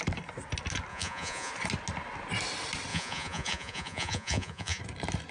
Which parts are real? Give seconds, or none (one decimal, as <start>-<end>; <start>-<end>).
0.0-0.9; 1.5-2.9; 4.8-5.3